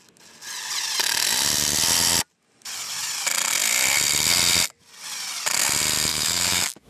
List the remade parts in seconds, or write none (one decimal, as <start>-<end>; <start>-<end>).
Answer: 6.1-6.9